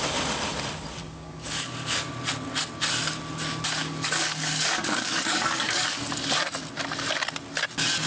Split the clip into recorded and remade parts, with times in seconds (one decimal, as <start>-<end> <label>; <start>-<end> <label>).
0.0-1.0 recorded; 1.0-2.1 remade; 2.1-3.8 recorded; 3.8-6.1 remade; 6.1-8.1 recorded